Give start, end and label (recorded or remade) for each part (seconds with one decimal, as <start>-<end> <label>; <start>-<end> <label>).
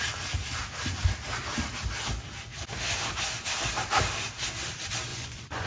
0.0-5.1 recorded; 5.1-5.7 remade